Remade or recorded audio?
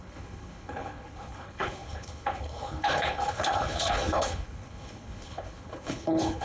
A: remade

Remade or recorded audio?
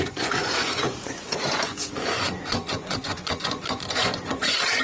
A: remade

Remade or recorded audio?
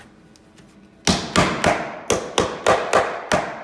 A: recorded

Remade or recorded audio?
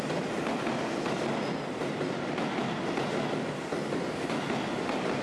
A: recorded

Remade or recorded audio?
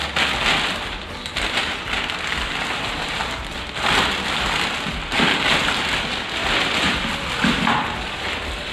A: recorded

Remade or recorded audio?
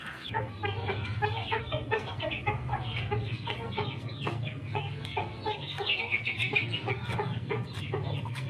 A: remade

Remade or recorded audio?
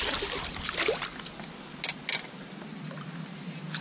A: recorded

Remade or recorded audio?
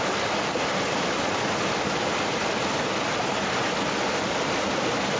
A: recorded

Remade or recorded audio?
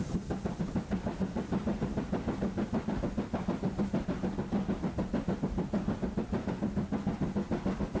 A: recorded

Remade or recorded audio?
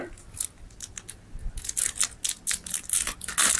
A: recorded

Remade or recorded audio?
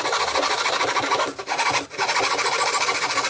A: recorded